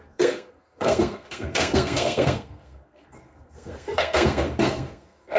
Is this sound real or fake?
fake